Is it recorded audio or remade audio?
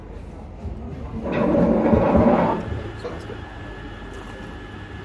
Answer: recorded